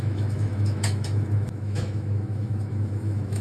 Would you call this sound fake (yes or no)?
yes